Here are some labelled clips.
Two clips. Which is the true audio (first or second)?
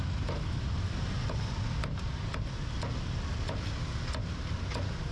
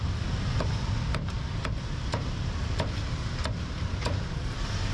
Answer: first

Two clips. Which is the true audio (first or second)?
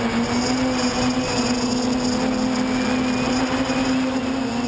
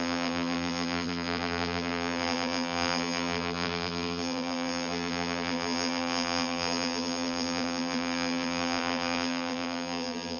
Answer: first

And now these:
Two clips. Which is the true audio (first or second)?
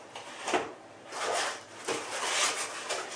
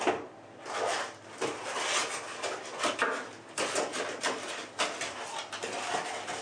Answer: second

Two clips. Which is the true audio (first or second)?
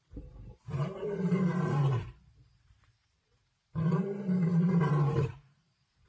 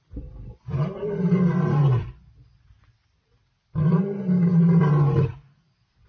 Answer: second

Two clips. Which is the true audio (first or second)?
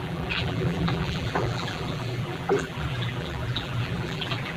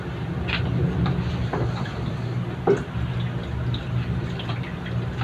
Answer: second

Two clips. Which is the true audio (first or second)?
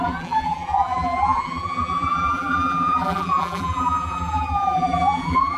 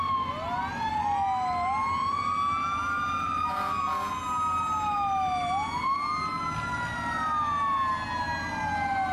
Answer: second